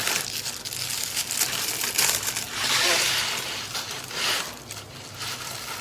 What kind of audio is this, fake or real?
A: real